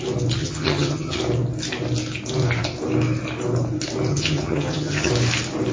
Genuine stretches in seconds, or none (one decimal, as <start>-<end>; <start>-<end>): 0.0-0.4; 1.2-4.1; 5.1-5.7